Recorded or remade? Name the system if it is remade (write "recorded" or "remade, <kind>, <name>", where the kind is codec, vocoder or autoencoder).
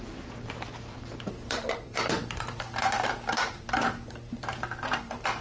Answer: remade, vocoder, BigVGAN v2